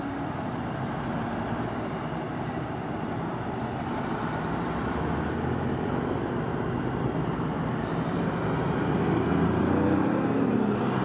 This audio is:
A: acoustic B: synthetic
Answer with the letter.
A